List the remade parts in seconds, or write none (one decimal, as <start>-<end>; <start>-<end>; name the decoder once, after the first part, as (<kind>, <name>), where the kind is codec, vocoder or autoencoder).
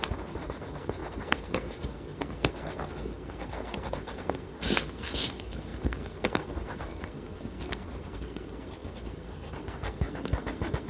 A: 0.0-10.9 (codec, SNAC)